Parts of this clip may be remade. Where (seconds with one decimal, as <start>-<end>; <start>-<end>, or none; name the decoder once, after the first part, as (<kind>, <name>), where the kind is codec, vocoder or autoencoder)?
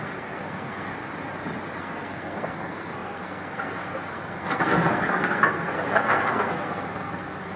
0.0-0.9 (codec, SNAC); 1.8-7.6